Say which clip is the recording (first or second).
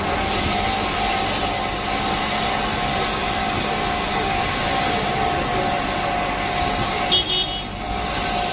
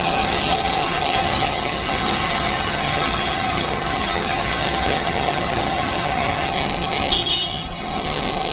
first